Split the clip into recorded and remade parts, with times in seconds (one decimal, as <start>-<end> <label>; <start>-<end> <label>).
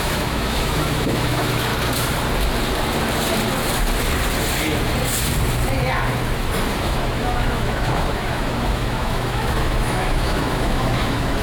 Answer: 0.0-1.7 remade; 1.7-6.8 recorded; 6.8-11.4 remade